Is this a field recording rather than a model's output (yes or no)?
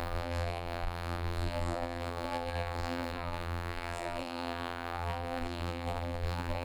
no